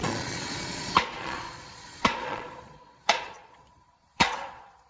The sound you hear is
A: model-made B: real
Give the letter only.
A